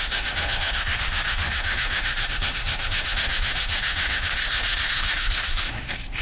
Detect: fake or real fake